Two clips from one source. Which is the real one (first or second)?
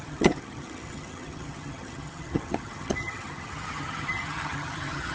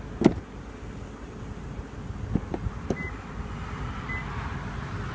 second